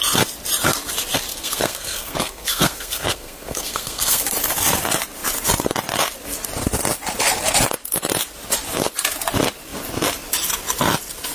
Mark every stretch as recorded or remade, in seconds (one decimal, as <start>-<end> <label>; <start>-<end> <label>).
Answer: 0.0-1.3 recorded; 1.3-4.2 remade; 4.2-11.3 recorded